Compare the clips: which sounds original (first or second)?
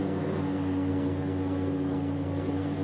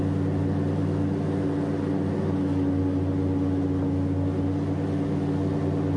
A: second